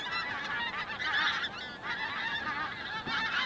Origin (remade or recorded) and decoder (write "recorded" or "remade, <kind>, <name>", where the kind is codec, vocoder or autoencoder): recorded